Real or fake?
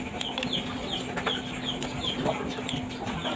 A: real